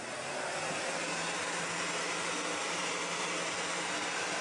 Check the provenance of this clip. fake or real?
real